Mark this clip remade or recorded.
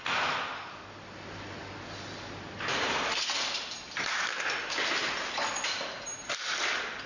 recorded